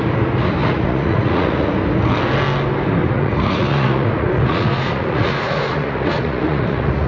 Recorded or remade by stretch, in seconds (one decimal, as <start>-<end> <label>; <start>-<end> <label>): 0.0-0.6 recorded; 0.6-1.7 remade; 1.7-3.0 recorded; 3.0-7.1 remade

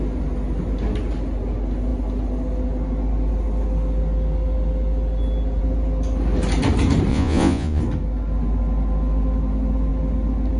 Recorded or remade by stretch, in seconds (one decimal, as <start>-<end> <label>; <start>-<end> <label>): 0.0-7.1 recorded; 7.1-7.8 remade; 7.8-10.6 recorded

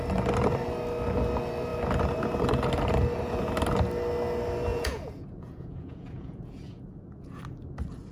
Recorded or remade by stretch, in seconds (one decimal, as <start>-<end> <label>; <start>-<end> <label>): 0.0-4.7 recorded; 4.7-7.4 remade; 7.4-8.1 recorded

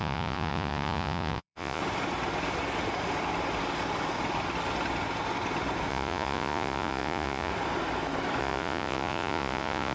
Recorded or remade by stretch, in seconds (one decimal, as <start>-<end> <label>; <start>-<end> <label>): 0.0-1.8 remade; 1.8-5.9 recorded; 5.9-7.5 remade; 7.5-8.4 recorded; 8.4-9.9 remade

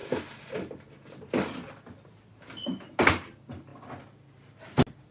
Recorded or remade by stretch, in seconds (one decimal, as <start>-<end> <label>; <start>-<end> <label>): 0.0-5.1 recorded

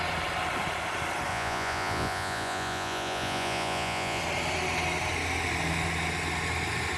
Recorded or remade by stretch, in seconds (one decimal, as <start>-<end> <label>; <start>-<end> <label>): 0.0-1.3 recorded; 1.3-4.2 remade; 4.2-7.0 recorded

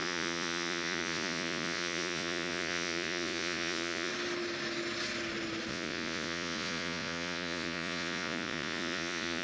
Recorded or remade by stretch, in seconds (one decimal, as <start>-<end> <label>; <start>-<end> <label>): 0.0-4.1 remade; 4.1-5.7 recorded; 5.7-9.4 remade

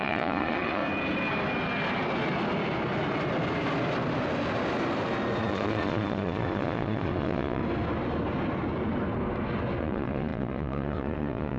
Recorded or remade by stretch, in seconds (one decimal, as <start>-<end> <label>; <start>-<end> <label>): 0.0-0.8 remade; 0.8-5.4 recorded; 5.4-7.6 remade; 7.6-9.8 recorded; 9.8-11.6 remade